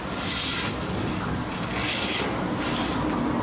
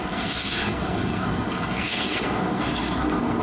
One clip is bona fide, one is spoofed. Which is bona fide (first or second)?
first